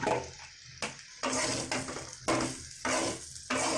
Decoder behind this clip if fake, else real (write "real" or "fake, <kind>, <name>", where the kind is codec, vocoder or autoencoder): real